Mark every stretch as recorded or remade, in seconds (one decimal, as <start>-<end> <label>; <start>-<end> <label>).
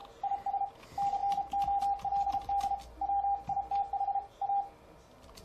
0.0-5.4 recorded